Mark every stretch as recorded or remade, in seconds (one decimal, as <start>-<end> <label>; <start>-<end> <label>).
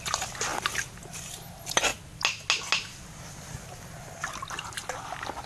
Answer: 0.0-5.5 recorded